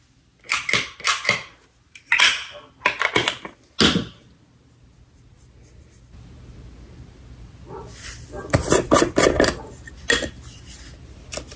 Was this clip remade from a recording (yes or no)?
no